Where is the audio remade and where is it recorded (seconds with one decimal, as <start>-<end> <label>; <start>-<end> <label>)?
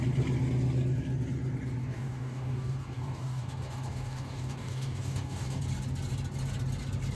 0.0-1.8 recorded; 1.8-5.6 remade; 5.6-7.1 recorded